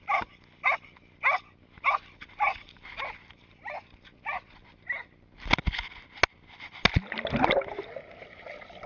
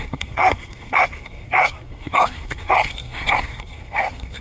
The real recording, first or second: first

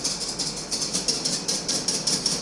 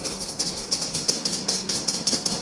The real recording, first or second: first